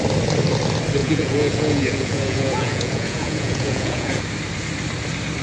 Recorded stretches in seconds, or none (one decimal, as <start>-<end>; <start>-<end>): 0.0-1.0; 4.2-5.4